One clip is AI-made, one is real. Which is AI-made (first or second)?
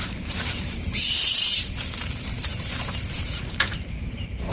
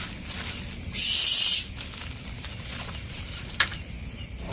first